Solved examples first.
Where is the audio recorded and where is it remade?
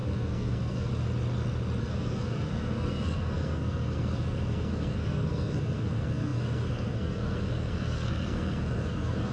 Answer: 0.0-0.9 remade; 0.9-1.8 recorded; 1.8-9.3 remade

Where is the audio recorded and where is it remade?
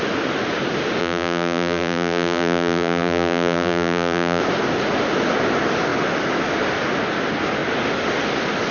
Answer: 0.0-1.0 recorded; 1.0-4.4 remade; 4.4-8.7 recorded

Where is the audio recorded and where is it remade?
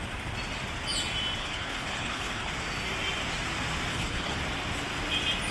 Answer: 0.0-1.4 recorded; 1.4-2.5 remade; 2.5-3.9 recorded; 3.9-4.4 remade; 4.4-5.5 recorded